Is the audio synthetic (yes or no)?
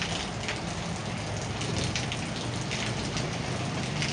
no